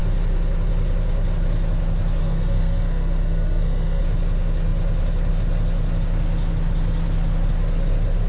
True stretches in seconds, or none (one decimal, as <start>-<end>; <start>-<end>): 0.0-2.2; 4.0-8.3